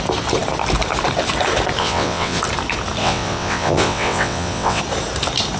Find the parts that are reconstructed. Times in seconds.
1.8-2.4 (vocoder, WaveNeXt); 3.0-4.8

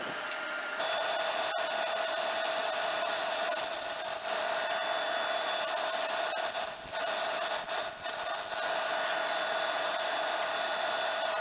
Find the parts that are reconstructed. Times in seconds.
none

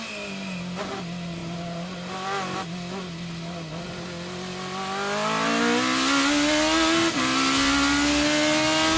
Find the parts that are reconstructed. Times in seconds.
none

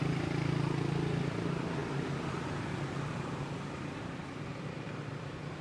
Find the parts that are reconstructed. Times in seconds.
none